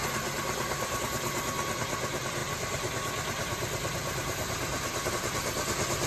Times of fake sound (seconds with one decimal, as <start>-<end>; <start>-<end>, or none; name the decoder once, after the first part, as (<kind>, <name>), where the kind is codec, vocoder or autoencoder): none